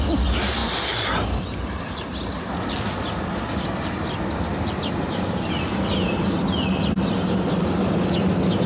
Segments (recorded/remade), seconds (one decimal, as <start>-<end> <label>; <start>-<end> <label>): 0.0-8.7 recorded